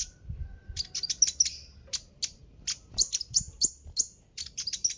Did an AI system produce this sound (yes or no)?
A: no